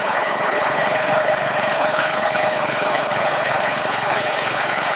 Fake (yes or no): yes